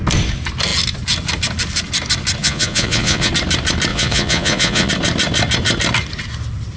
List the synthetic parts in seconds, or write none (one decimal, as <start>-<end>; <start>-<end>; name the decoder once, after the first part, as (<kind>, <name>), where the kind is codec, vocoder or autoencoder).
2.4-3.3 (vocoder, Vocos); 3.9-4.9